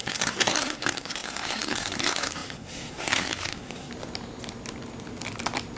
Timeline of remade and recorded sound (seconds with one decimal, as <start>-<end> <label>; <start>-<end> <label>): 0.0-3.9 remade; 3.9-5.8 recorded